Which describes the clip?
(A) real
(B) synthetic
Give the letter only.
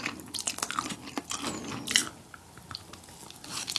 A